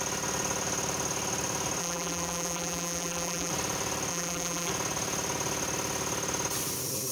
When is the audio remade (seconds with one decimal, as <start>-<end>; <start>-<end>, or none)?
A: 1.8-3.5; 4.1-4.7